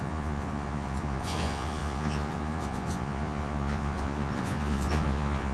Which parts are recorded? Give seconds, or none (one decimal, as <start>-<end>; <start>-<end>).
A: none